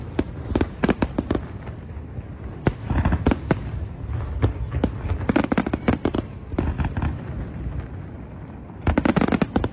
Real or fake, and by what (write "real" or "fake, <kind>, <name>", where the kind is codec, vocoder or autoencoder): real